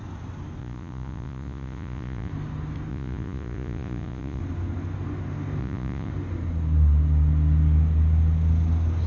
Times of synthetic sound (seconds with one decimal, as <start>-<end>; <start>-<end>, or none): 0.6-2.3; 2.9-4.4; 5.6-6.1